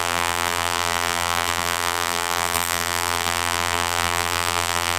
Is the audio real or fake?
fake